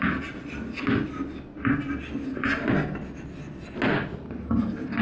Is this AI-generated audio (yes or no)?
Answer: no